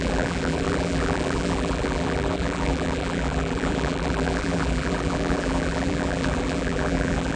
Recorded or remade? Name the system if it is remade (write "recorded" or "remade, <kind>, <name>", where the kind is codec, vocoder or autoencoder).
remade, vocoder, BigVGAN v2